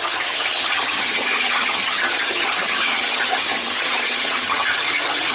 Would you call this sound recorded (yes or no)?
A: no